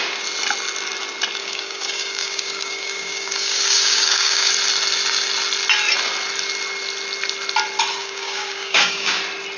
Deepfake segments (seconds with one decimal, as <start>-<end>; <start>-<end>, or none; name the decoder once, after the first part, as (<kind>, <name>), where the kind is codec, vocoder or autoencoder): 1.4-4.5 (codec, DAC); 8.0-9.2